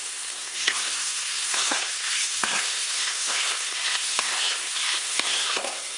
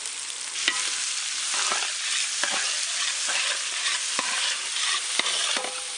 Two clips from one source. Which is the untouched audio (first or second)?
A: second